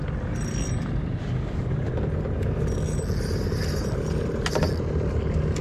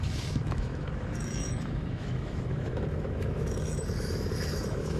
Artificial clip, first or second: second